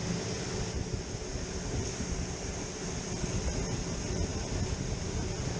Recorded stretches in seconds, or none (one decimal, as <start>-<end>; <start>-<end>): 0.0-5.6